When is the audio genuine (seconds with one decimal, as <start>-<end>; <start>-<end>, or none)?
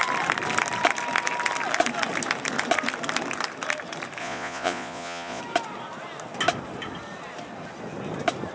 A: 0.0-4.2; 5.4-8.5